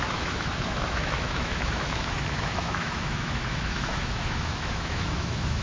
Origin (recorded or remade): remade